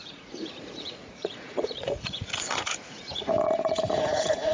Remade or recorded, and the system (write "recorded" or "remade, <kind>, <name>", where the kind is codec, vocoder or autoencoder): remade, vocoder, Vocos